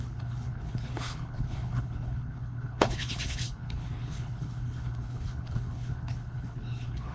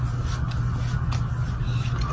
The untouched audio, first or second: second